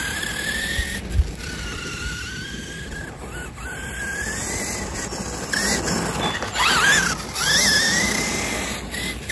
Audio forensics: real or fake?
real